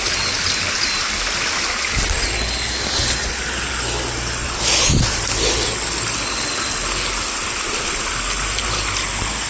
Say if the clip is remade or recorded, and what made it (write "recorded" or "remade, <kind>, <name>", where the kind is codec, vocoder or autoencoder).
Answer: recorded